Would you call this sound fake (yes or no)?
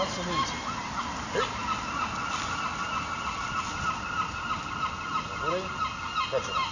no